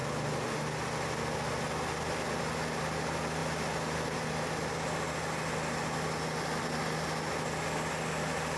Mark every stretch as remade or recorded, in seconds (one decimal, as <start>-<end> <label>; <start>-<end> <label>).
0.0-8.6 recorded